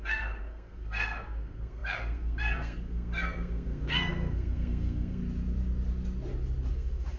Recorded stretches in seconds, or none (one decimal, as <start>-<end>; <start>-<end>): 5.2-6.7